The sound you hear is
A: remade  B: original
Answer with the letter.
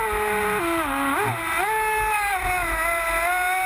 B